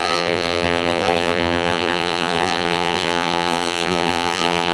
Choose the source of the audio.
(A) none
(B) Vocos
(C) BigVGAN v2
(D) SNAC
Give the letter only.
C